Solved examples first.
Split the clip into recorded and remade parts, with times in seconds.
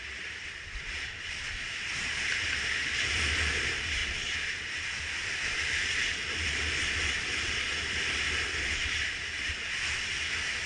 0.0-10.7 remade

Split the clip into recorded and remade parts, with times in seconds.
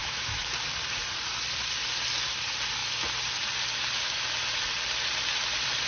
0.0-0.6 remade; 0.6-5.9 recorded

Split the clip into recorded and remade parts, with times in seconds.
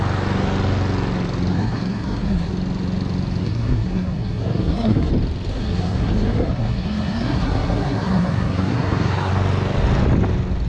0.0-1.5 recorded; 1.5-2.5 remade; 2.5-3.4 recorded; 3.4-5.1 remade; 5.1-5.5 recorded; 5.5-9.3 remade; 9.3-10.7 recorded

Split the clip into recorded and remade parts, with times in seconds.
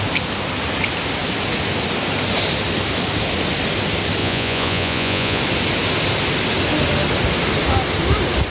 0.0-4.2 recorded; 4.2-5.4 remade; 5.4-8.5 recorded